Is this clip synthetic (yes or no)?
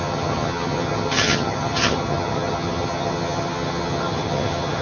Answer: yes